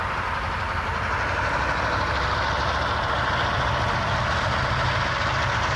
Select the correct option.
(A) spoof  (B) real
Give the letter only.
B